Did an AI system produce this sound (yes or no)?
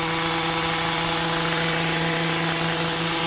no